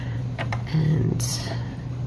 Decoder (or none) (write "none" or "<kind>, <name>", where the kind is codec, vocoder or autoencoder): vocoder, BigVGAN v2